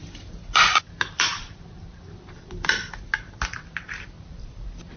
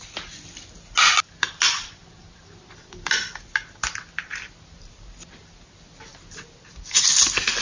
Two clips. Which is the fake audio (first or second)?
first